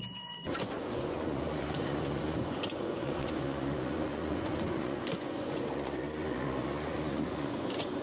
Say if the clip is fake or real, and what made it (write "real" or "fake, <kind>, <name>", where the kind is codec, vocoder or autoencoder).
fake, vocoder, Vocos